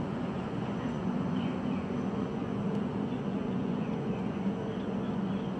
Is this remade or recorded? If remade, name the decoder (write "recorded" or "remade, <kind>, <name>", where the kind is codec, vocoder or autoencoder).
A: remade, vocoder, Vocos